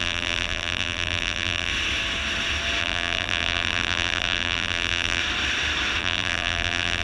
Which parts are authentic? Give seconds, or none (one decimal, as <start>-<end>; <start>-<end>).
1.7-2.8; 5.2-6.0